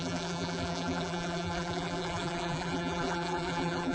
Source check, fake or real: fake